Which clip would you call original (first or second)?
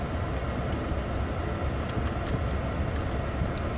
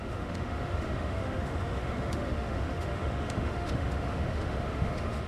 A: first